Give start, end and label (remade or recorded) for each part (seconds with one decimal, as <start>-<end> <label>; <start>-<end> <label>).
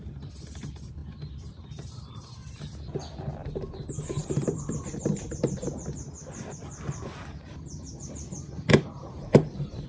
0.0-1.0 recorded; 1.0-2.0 remade; 2.0-2.4 recorded; 2.4-3.0 remade; 3.0-4.2 recorded; 4.2-9.1 remade; 9.1-9.9 recorded